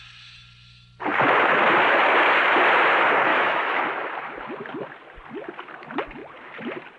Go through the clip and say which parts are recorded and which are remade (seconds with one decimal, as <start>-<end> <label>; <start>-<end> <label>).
0.0-3.3 recorded; 3.3-3.8 remade; 3.8-7.0 recorded